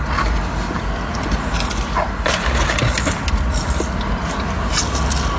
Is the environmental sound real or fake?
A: real